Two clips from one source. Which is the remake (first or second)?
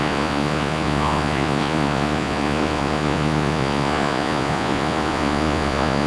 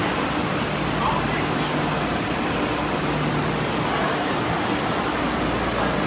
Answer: first